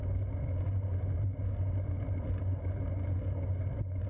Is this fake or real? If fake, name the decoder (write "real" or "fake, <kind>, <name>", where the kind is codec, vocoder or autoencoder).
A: real